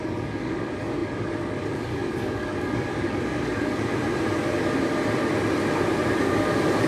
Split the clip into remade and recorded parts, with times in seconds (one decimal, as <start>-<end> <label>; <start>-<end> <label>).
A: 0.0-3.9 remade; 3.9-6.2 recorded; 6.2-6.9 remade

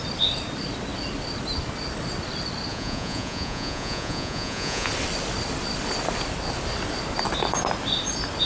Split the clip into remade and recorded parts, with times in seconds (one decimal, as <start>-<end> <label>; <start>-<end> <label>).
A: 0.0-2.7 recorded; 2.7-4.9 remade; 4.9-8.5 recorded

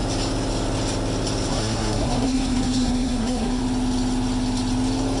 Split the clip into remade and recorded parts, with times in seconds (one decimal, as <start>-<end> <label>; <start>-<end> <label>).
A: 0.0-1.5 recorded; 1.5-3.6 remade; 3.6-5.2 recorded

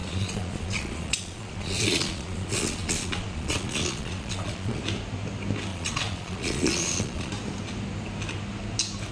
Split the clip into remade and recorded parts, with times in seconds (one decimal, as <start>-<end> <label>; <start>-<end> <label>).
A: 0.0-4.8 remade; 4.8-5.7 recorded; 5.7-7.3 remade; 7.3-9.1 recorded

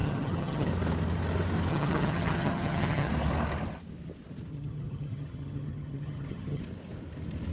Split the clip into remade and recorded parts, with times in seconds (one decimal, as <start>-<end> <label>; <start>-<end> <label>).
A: 0.0-0.7 remade; 0.7-1.7 recorded; 1.7-3.1 remade; 3.1-4.5 recorded; 4.5-6.6 remade; 6.6-7.5 recorded